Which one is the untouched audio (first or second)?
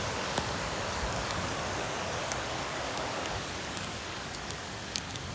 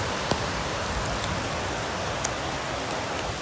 second